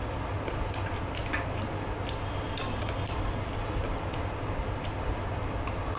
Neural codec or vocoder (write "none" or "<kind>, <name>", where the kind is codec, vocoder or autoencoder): none